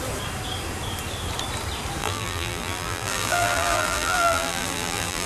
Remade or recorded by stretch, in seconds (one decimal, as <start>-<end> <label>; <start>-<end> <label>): 0.0-2.0 recorded; 2.0-5.3 remade